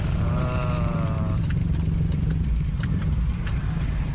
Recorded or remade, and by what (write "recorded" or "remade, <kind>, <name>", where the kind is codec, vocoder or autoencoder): remade, vocoder, BigVGAN v2